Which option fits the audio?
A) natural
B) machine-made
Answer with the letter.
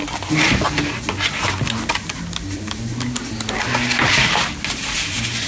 A